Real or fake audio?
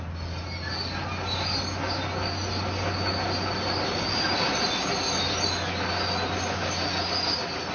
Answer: real